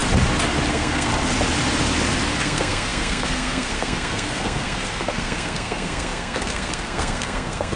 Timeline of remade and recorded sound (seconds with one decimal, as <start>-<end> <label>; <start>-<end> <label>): 0.0-0.7 recorded; 0.7-1.1 remade; 1.1-2.4 recorded; 2.4-7.8 remade